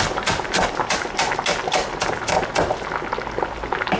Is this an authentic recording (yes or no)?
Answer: yes